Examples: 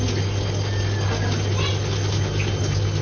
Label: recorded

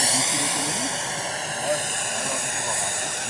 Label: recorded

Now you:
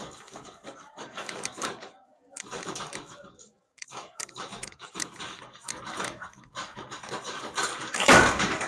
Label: remade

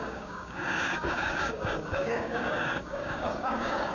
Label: remade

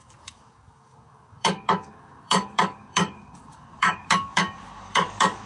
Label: remade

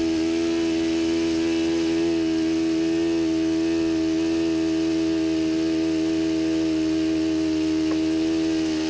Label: recorded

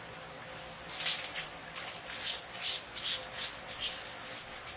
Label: recorded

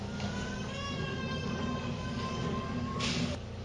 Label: remade